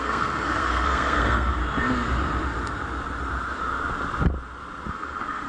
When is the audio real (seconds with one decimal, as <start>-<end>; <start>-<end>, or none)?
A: 1.6-4.9